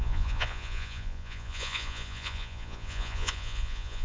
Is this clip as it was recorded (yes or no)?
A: no